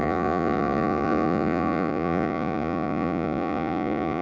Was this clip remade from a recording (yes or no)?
yes